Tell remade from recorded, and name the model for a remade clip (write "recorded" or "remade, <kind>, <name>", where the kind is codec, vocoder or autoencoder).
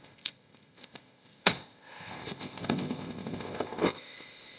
remade, codec, ZipCodec